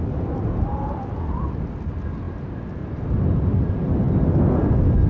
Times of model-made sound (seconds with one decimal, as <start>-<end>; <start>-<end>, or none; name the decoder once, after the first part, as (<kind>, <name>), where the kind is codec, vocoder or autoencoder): none